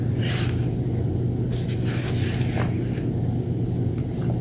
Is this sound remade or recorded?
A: recorded